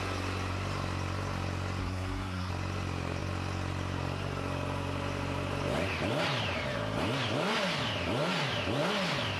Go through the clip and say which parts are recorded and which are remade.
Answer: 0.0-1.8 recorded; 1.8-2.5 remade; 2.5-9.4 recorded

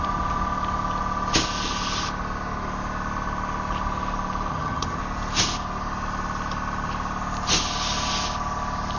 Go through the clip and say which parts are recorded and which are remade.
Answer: 0.0-4.5 recorded; 4.5-5.0 remade; 5.0-9.0 recorded

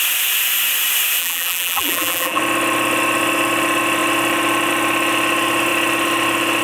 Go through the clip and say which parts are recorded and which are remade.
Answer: 0.0-1.2 recorded; 1.2-2.4 remade; 2.4-6.6 recorded

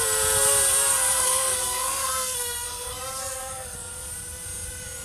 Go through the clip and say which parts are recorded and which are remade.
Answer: 0.0-0.9 recorded; 0.9-3.9 remade; 3.9-5.0 recorded

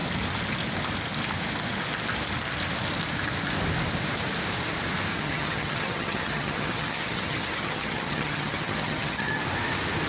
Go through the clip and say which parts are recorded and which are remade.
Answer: 0.0-5.1 recorded; 5.1-9.4 remade; 9.4-10.1 recorded

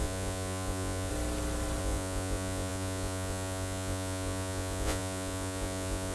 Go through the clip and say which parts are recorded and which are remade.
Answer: 0.0-1.1 remade; 1.1-1.8 recorded; 1.8-6.1 remade

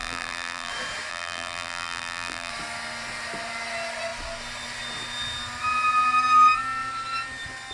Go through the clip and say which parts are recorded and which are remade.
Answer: 0.0-0.7 remade; 0.7-1.1 recorded; 1.1-2.5 remade; 2.5-7.7 recorded

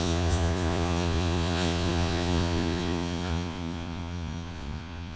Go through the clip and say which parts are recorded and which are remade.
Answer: 0.0-5.2 remade